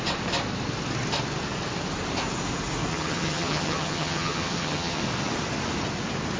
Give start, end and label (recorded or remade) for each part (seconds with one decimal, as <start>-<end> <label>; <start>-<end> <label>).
0.0-2.9 recorded; 2.9-5.0 remade; 5.0-6.4 recorded